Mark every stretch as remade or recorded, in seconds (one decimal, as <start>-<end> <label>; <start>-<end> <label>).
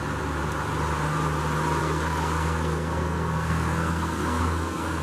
0.0-1.8 recorded; 1.8-5.0 remade